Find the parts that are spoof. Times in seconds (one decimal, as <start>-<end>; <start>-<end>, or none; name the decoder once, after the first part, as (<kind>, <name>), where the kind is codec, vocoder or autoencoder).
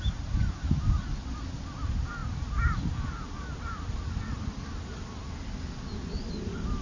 none